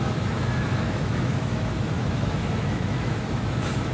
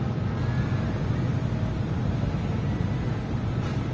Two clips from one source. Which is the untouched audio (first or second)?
second